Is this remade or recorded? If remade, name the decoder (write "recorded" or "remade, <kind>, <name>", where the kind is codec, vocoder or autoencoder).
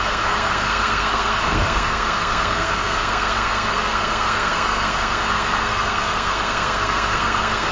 remade, codec, SNAC